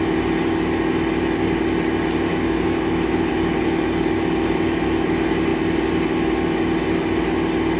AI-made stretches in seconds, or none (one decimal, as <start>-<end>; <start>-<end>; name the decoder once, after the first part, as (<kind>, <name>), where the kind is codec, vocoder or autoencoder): 2.3-3.3 (autoencoder, DAC-VAE)